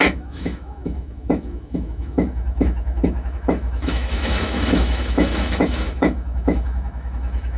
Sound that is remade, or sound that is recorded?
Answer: remade